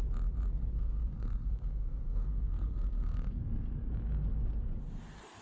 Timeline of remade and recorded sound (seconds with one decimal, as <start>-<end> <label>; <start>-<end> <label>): 0.0-0.7 recorded; 0.7-3.9 remade; 3.9-5.4 recorded

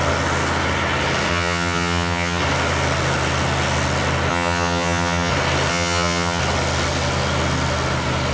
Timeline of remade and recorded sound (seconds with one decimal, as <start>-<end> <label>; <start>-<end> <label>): 0.0-1.3 recorded; 1.3-2.4 remade; 2.4-4.3 recorded; 4.3-5.3 remade; 5.3-5.7 recorded; 5.7-6.4 remade; 6.4-8.3 recorded

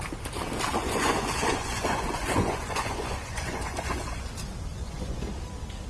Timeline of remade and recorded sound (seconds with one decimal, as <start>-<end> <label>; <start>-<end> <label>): 0.0-0.8 recorded; 0.8-4.3 remade; 4.3-4.7 recorded; 4.7-5.3 remade; 5.3-5.9 recorded

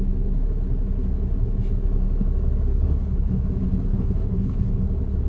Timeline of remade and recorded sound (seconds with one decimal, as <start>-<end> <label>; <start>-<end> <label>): 0.0-2.7 recorded; 2.7-3.4 remade; 3.4-3.9 recorded; 3.9-4.7 remade; 4.7-5.3 recorded